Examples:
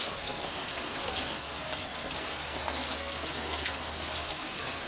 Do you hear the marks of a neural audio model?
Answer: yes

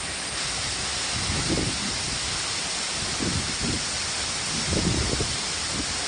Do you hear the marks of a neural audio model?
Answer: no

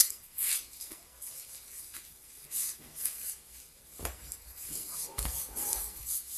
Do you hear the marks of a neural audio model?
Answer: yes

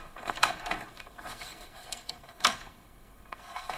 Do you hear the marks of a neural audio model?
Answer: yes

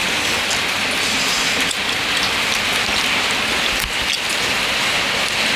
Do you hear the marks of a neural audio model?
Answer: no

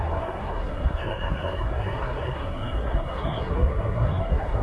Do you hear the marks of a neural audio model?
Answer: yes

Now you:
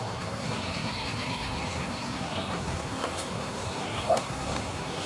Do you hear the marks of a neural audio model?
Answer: yes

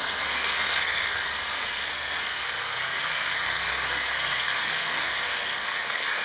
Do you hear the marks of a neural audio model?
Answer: yes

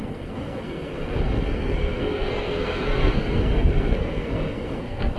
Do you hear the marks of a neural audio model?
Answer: yes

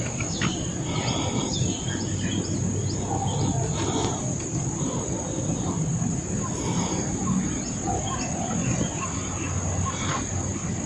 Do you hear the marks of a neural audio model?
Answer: no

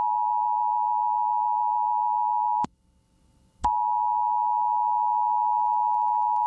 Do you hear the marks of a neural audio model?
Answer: no